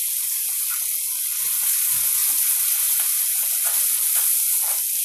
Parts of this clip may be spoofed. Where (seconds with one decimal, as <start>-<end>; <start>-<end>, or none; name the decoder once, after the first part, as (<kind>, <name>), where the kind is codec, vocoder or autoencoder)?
0.0-0.8 (vocoder, BigVGAN v2)